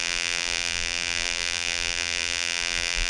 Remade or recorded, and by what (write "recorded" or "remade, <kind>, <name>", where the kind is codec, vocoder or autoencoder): remade, vocoder, BigVGAN v2